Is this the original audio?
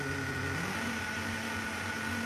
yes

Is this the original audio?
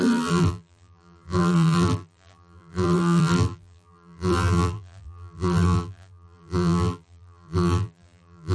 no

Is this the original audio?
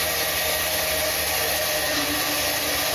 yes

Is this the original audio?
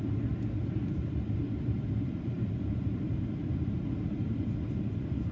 no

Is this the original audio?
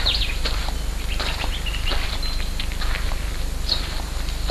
yes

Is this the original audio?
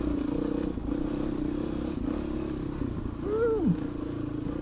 yes